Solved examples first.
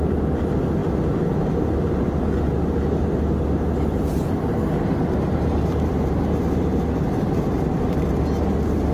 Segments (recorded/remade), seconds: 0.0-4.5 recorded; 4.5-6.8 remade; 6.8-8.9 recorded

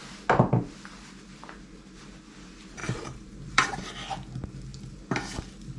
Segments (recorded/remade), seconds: 0.0-2.8 recorded; 2.8-3.8 remade; 3.8-5.8 recorded

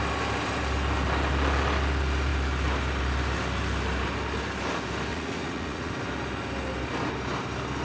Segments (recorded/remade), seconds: 0.0-5.1 recorded; 5.1-5.9 remade; 5.9-7.8 recorded

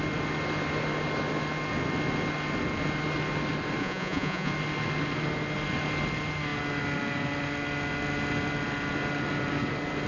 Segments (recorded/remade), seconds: 0.0-3.8 recorded; 3.8-4.5 remade; 4.5-10.1 recorded